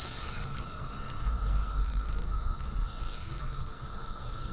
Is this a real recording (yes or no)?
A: no